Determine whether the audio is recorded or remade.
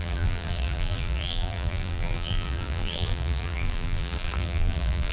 remade